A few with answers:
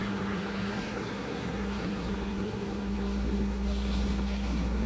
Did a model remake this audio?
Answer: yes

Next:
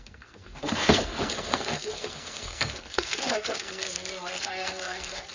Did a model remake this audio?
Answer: yes